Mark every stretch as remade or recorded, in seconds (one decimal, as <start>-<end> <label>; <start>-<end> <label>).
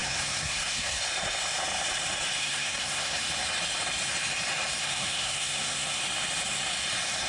0.0-1.0 remade; 1.0-2.4 recorded; 2.4-3.2 remade; 3.2-4.8 recorded; 4.8-6.0 remade; 6.0-7.3 recorded